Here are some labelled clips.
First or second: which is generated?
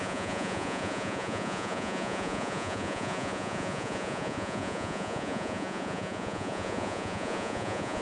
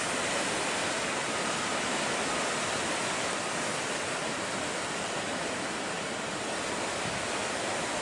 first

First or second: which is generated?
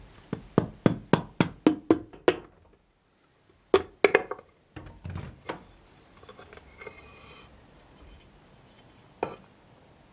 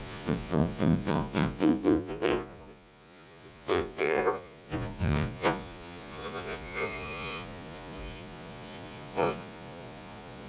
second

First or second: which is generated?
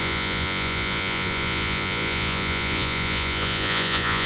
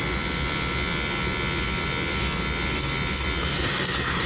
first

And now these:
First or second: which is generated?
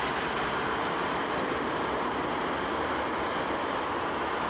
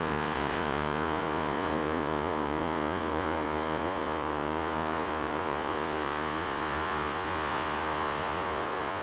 second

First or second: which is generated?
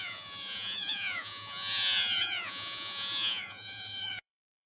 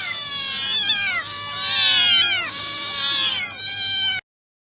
first